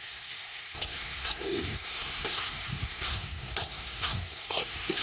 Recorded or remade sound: remade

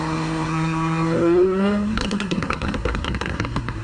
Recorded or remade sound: remade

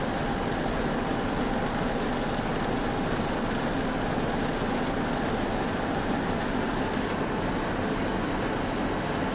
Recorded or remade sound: recorded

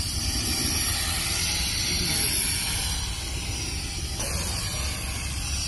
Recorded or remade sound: recorded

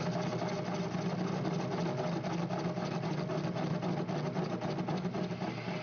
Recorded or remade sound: recorded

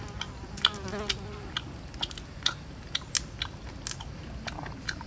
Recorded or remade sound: recorded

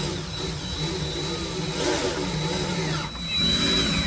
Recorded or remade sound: recorded